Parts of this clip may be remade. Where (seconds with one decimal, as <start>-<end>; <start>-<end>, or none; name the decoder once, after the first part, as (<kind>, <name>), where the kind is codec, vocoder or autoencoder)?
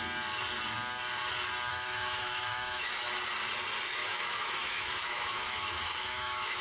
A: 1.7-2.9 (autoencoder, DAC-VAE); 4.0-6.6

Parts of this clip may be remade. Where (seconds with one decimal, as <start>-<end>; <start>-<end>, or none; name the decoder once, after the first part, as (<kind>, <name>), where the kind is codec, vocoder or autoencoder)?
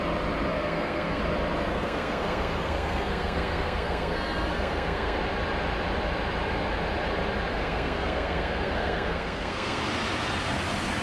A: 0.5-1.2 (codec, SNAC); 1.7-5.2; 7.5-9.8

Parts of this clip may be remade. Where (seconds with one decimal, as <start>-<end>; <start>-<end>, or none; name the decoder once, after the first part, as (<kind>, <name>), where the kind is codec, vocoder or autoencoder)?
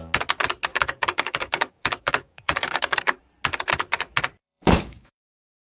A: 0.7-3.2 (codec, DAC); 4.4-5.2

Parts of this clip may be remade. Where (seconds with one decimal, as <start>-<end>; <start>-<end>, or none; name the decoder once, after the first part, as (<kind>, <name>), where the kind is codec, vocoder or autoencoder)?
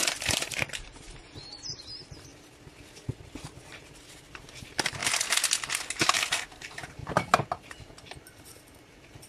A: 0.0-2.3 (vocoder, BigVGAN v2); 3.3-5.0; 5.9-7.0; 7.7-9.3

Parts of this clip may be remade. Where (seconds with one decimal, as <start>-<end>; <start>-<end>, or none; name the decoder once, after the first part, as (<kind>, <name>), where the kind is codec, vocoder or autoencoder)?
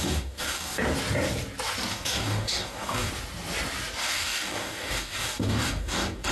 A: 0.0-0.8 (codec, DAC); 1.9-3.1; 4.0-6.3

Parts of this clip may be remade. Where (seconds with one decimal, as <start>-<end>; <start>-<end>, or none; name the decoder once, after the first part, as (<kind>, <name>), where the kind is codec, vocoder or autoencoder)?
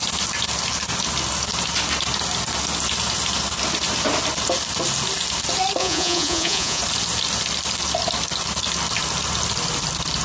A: 5.8-6.8 (vocoder, Vocos)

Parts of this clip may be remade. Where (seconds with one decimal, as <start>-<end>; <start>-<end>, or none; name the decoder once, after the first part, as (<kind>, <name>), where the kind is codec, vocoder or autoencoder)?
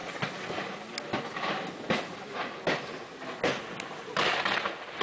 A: none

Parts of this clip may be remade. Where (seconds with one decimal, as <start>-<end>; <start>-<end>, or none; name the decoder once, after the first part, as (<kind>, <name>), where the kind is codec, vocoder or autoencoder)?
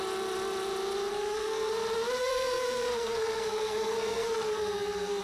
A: 1.1-1.7 (codec, SNAC); 2.2-5.2